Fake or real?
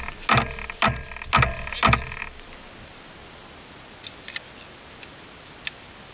real